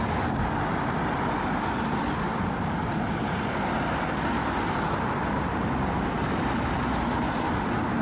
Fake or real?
real